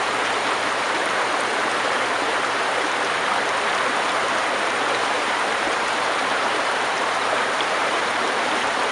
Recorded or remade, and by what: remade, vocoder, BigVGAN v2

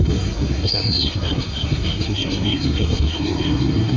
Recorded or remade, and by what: remade, codec, SNAC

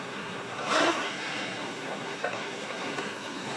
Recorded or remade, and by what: remade, codec, SNAC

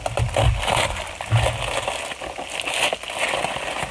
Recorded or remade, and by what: recorded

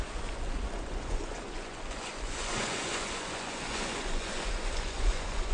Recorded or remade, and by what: remade, vocoder, Vocos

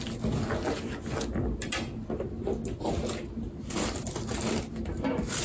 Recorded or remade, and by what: recorded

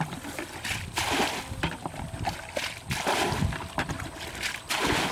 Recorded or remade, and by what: recorded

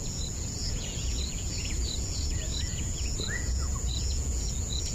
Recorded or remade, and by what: remade, vocoder, Vocos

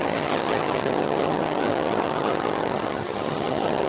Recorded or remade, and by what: remade, vocoder, HiFi-GAN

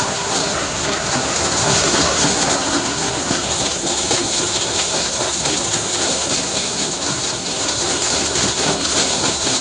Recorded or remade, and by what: remade, codec, SNAC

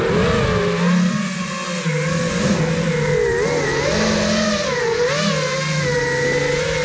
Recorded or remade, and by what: recorded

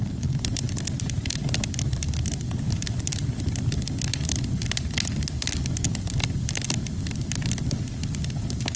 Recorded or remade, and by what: remade, vocoder, BigVGAN v2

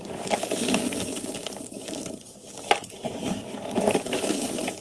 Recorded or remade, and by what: remade, codec, DAC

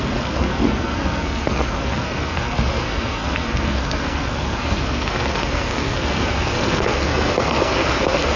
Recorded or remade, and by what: remade, codec, SNAC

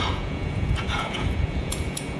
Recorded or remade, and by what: remade, vocoder, Vocos